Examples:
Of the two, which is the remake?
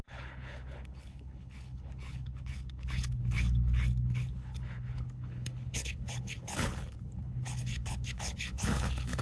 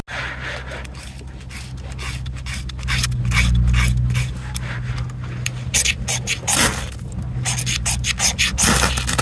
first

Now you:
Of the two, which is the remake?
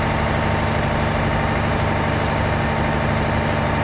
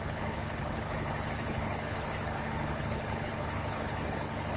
second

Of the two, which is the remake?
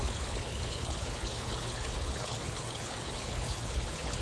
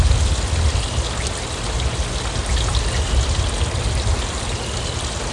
first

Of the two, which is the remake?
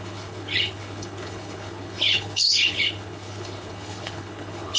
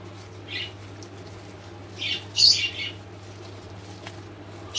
first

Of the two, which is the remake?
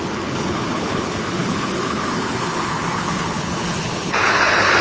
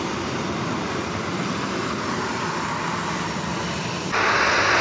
first